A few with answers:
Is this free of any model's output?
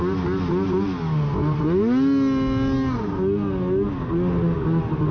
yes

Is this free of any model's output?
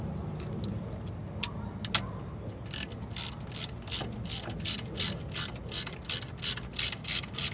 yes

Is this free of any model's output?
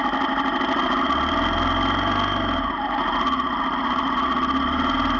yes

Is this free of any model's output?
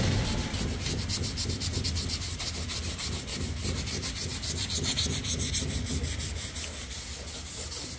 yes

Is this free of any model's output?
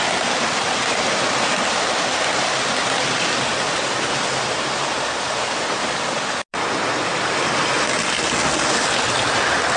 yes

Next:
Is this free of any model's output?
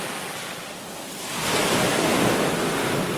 no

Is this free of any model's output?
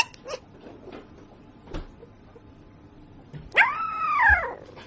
yes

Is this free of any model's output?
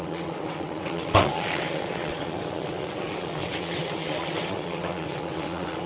no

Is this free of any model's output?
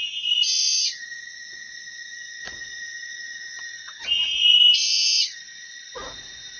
no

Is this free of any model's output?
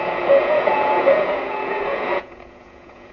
no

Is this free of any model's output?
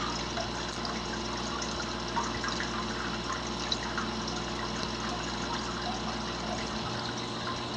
yes